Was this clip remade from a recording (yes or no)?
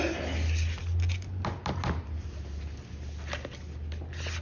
no